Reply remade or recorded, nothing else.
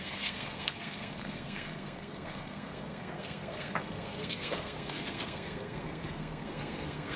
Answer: remade